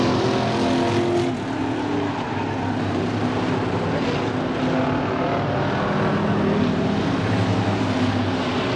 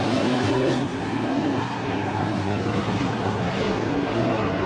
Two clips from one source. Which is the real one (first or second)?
first